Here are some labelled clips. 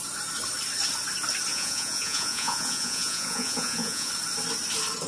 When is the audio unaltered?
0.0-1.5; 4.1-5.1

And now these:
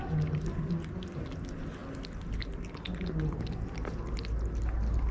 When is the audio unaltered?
0.0-5.1

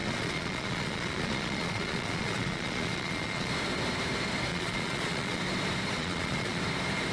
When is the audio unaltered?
3.5-4.5; 5.4-6.0; 6.6-7.1

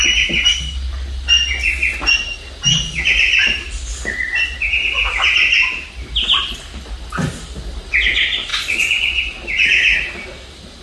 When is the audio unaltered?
0.0-8.5; 9.2-10.8

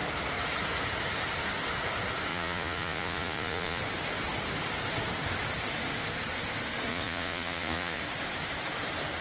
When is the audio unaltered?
0.0-2.3; 3.8-6.9; 8.0-9.2